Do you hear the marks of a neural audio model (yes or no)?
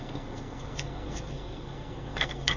yes